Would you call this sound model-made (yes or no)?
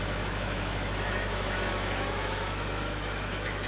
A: yes